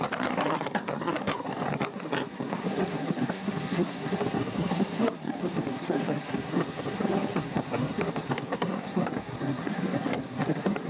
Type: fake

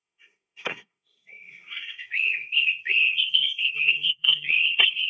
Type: fake